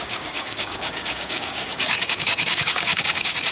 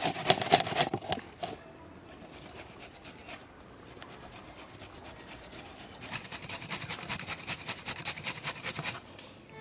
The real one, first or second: second